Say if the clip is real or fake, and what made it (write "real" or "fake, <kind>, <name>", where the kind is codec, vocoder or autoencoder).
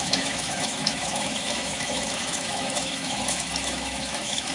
fake, autoencoder, DAC-VAE